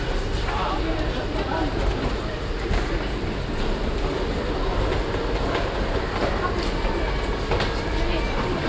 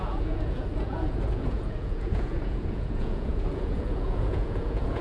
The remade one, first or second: second